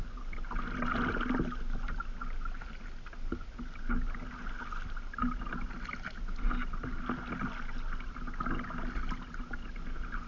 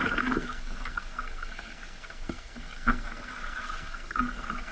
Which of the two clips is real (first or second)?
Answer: first